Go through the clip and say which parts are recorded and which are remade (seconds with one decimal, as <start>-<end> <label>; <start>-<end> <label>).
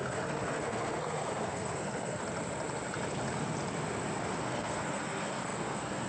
0.0-2.2 remade; 2.2-4.4 recorded; 4.4-6.1 remade